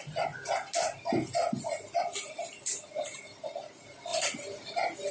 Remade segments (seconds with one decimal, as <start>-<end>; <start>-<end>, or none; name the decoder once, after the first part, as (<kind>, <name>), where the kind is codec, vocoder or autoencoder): none